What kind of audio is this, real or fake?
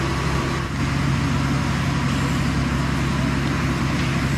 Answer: real